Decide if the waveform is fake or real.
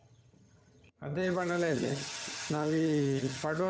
fake